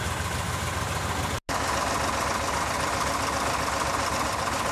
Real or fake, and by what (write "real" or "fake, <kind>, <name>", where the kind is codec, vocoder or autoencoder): real